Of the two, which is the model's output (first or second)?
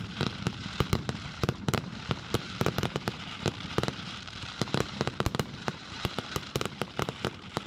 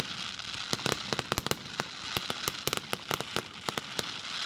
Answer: first